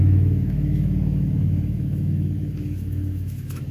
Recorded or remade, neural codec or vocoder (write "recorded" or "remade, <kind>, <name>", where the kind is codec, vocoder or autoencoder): remade, autoencoder, DAC-VAE